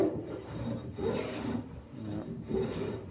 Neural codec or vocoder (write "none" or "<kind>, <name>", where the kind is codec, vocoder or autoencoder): none